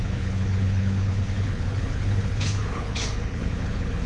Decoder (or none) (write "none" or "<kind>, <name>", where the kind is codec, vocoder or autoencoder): codec, HILCodec